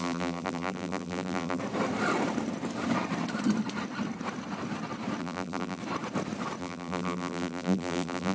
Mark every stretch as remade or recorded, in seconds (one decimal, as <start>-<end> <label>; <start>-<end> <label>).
0.0-1.6 remade; 1.6-5.2 recorded; 5.2-5.8 remade; 5.8-6.6 recorded; 6.6-8.3 remade